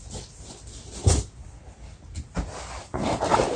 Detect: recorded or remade recorded